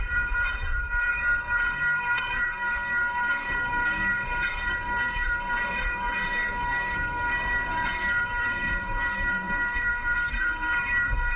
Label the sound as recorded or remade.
remade